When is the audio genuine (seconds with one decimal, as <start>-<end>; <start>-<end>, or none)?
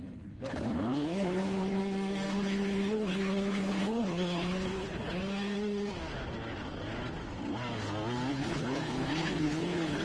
1.8-2.3; 5.2-8.3